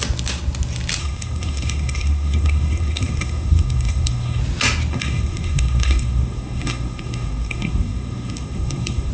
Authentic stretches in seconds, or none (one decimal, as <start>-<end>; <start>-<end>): 0.0-1.0; 4.4-4.9